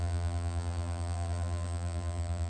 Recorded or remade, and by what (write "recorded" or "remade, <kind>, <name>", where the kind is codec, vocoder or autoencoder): remade, vocoder, BigVGAN v2